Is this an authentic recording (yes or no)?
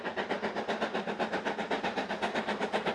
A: yes